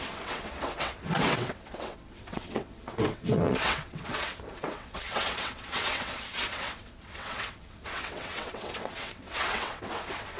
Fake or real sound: fake